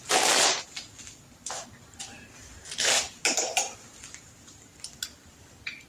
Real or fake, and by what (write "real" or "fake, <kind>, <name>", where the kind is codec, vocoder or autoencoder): real